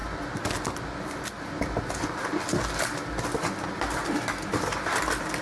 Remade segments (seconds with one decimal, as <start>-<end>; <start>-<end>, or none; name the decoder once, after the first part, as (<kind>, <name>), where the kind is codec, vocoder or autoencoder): none